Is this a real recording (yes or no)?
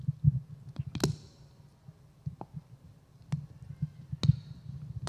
yes